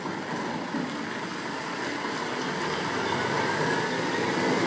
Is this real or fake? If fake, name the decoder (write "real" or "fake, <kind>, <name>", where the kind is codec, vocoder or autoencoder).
real